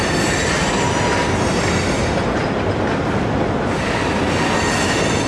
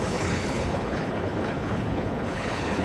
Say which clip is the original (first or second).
first